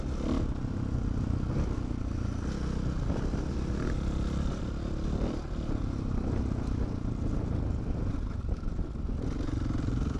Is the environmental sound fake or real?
real